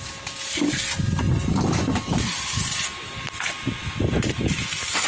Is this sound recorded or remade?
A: recorded